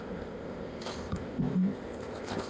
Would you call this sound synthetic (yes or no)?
yes